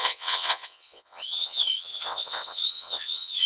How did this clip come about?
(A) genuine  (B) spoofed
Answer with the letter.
B